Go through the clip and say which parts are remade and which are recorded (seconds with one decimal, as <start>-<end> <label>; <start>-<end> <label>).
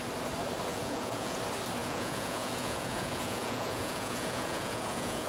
0.0-0.7 recorded; 0.7-1.4 remade; 1.4-1.8 recorded; 1.8-5.3 remade